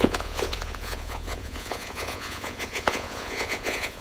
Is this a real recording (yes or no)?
no